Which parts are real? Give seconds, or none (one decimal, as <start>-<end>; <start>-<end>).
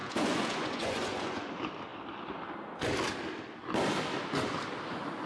1.5-5.3